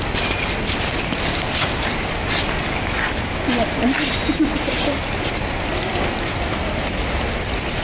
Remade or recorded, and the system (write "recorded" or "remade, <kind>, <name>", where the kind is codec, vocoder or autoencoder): recorded